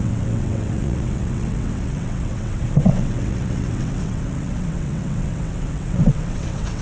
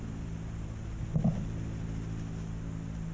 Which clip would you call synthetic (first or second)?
first